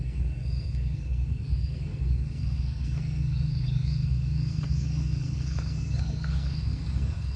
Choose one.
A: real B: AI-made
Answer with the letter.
B